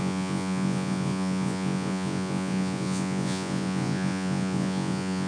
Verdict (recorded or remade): remade